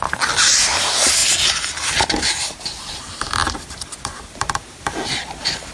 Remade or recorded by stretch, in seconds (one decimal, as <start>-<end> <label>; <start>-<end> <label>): 0.0-5.7 recorded